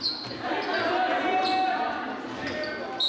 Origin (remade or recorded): recorded